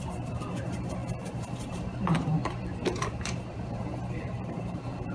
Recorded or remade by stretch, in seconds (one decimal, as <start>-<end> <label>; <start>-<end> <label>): 0.0-2.4 remade; 2.4-3.5 recorded; 3.5-5.1 remade